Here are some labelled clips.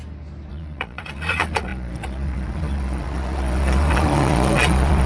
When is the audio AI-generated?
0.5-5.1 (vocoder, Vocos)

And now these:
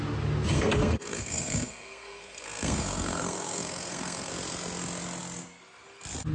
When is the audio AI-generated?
0.5-4.3 (codec, SNAC)

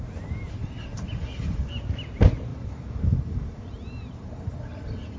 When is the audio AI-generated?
0.6-1.7 (vocoder, BigVGAN v2); 2.5-5.2

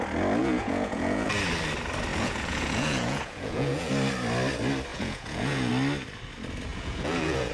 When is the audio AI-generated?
0.4-1.3 (vocoder, Vocos); 2.1-3.9; 4.9-5.7; 6.7-7.5

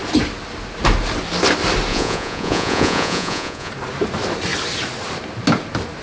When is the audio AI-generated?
1.9-3.7 (vocoder, Vocos)

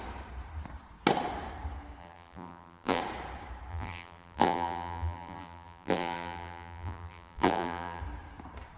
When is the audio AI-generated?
2.0-3.0 (vocoder, BigVGAN v2); 3.7-8.0

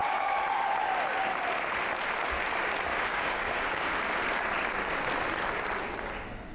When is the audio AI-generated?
2.9-4.0 (codec, DAC)